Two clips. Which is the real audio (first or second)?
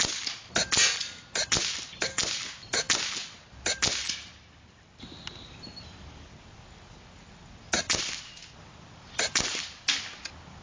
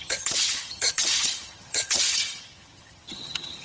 first